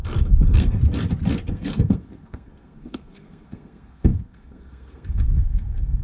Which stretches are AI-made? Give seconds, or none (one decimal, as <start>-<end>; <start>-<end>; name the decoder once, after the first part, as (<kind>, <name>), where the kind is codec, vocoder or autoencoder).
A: 0.0-0.8 (codec, SNAC); 1.5-6.0